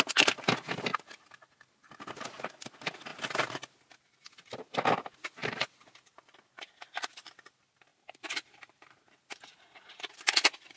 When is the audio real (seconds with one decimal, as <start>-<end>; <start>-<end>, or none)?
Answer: 0.0-5.4; 6.1-7.9; 9.1-10.8

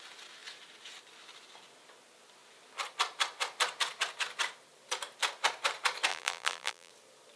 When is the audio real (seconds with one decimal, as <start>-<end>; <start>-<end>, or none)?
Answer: 0.0-6.1; 6.9-7.4

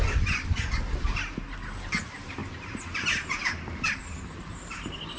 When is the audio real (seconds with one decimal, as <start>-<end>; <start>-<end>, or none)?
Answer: 0.0-2.4; 4.0-5.2

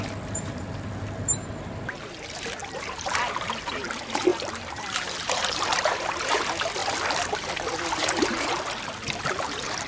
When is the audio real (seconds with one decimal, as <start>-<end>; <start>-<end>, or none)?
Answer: 0.0-2.6; 3.5-4.3; 6.2-9.9

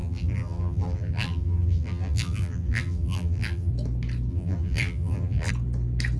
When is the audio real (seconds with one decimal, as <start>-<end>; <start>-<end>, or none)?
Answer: 3.7-4.3; 5.5-6.2

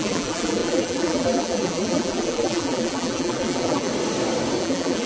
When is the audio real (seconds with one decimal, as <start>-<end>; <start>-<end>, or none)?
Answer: 3.9-4.6